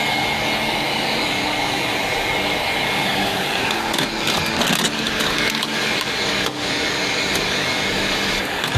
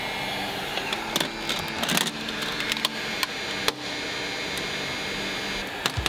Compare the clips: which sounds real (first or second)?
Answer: second